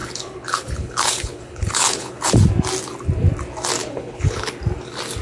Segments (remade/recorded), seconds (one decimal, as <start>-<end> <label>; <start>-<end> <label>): 0.0-2.3 remade; 2.3-3.8 recorded; 3.8-4.5 remade; 4.5-5.2 recorded